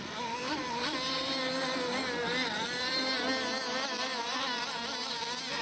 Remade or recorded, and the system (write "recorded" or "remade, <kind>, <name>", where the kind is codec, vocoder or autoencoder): recorded